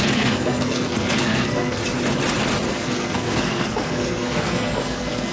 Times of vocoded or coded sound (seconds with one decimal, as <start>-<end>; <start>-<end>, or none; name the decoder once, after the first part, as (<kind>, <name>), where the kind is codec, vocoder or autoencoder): 0.0-1.8 (codec, SNAC); 2.7-5.3